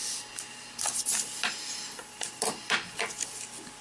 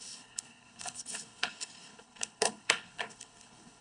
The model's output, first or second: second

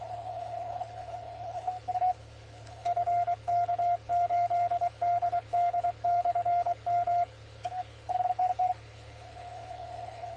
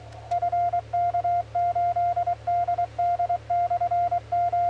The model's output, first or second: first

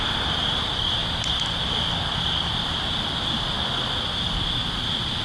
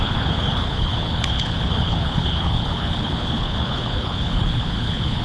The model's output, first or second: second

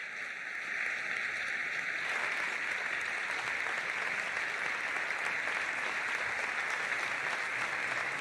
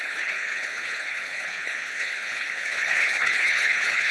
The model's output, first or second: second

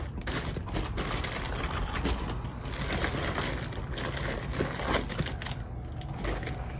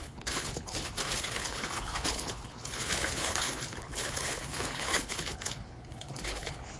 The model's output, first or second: second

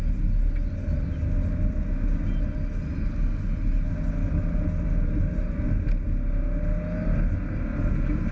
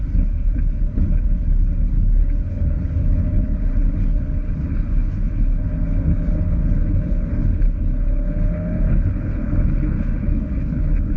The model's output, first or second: second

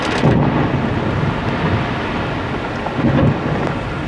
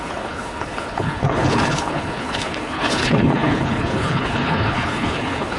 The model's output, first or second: second